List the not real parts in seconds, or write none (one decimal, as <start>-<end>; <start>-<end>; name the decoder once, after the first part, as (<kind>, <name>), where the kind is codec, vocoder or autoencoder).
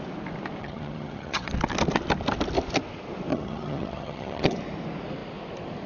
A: 0.6-1.5 (vocoder, HiFi-GAN); 3.3-4.6